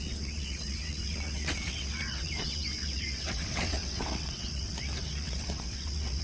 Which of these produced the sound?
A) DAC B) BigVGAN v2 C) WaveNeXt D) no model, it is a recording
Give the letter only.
C